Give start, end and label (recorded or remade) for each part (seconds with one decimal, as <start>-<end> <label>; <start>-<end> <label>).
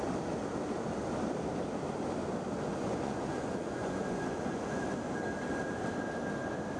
0.0-2.8 recorded; 2.8-4.9 remade; 4.9-6.8 recorded